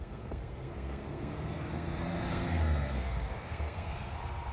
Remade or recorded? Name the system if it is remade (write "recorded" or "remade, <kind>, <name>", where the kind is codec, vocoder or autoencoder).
remade, codec, SNAC